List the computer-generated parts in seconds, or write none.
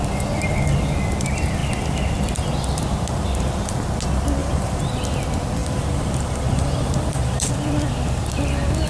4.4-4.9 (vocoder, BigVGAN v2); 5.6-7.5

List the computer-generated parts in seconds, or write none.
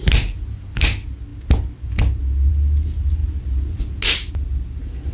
none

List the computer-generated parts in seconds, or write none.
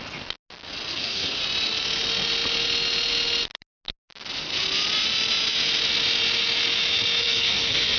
0.9-1.4 (codec, SNAC); 7.2-8.0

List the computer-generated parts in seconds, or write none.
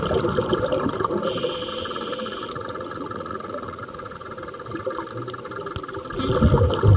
1.8-4.3 (vocoder, Vocos)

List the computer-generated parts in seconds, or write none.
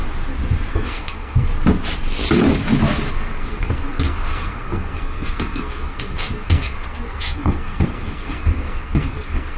0.7-1.5 (codec, SNAC); 3.1-9.6